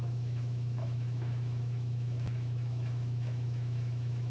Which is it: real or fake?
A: fake